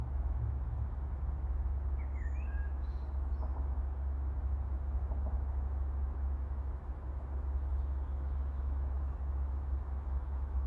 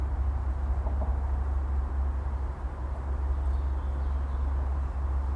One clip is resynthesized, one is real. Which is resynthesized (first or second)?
first